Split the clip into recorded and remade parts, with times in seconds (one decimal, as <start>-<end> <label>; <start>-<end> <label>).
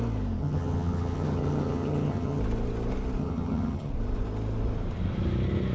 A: 0.0-0.4 recorded; 0.4-2.4 remade; 2.4-3.2 recorded; 3.2-3.9 remade; 3.9-5.7 recorded